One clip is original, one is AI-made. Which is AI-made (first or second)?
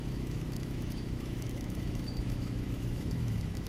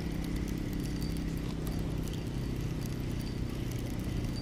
first